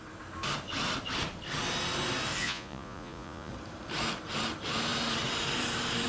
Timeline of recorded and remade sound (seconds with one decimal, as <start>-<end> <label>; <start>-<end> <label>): 0.0-2.4 recorded; 2.4-3.5 remade; 3.5-6.1 recorded